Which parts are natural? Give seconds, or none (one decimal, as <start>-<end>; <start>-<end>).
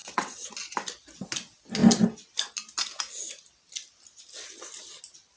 0.5-5.4